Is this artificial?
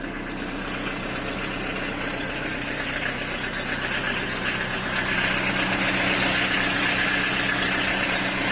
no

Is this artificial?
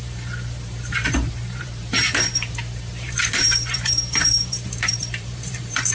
yes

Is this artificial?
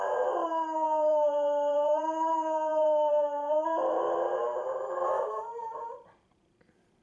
yes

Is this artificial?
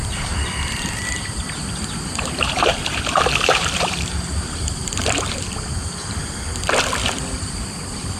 yes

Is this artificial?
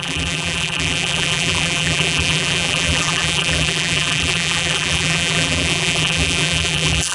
yes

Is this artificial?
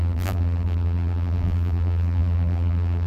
yes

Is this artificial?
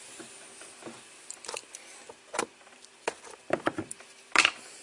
yes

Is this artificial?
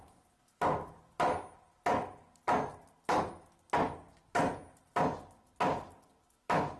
no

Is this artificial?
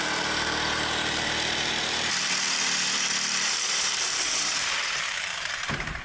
yes